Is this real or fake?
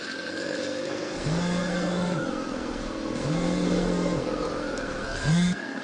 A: fake